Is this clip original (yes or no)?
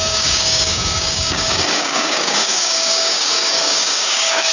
no